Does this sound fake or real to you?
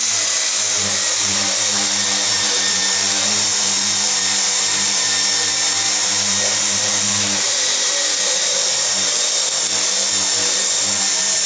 fake